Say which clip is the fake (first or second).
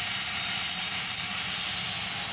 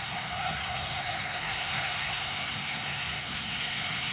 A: second